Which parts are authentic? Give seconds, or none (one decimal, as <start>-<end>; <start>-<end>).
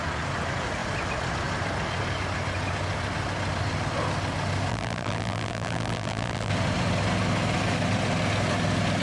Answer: 0.0-4.7; 6.5-9.0